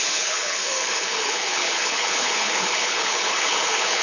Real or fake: fake